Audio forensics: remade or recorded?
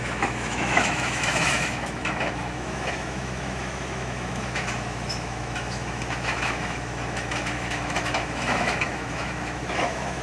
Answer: remade